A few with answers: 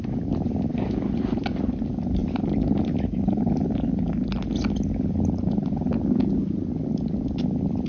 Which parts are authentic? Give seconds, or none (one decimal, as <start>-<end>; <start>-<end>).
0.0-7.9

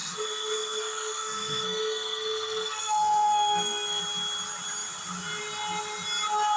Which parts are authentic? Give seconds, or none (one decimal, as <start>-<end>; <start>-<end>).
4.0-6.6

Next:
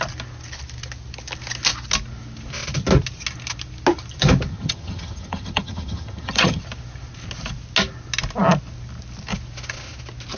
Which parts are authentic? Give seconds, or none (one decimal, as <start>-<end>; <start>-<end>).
0.0-4.5; 6.6-10.4

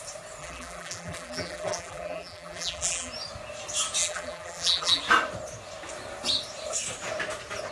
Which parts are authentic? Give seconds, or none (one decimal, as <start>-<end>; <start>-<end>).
0.0-0.4; 3.1-4.0; 5.0-7.7